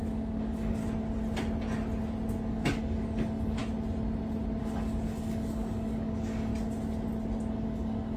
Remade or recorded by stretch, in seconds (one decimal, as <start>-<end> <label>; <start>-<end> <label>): 0.0-0.8 remade; 0.8-2.5 recorded; 2.5-3.6 remade; 3.6-4.6 recorded; 4.6-6.5 remade; 6.5-7.5 recorded; 7.5-8.2 remade